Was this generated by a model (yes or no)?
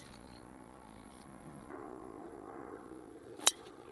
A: yes